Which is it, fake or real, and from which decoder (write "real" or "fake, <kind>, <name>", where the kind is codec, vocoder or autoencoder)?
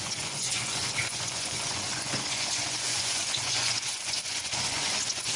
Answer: fake, vocoder, Vocos